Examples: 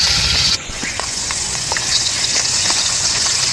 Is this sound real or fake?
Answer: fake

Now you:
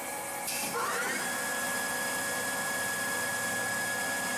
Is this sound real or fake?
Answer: real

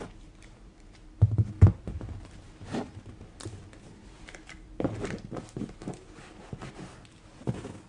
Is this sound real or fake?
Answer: real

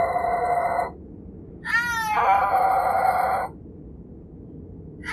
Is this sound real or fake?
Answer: real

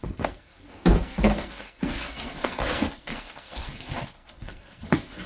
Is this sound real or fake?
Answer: fake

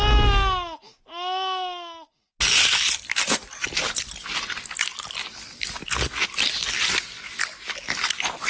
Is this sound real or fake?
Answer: real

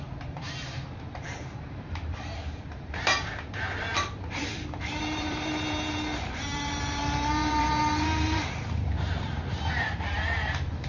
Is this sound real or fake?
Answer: fake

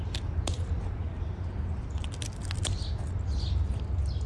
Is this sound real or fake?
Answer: real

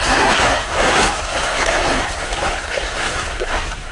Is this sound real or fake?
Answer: fake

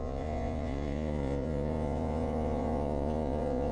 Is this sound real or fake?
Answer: fake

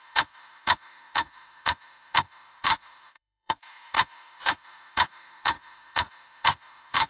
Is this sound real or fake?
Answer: fake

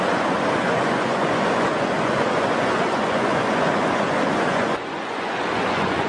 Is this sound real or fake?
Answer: fake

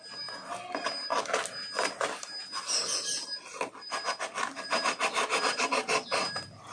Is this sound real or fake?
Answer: real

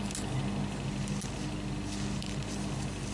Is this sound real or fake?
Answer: real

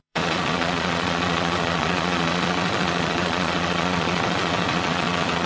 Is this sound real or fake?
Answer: fake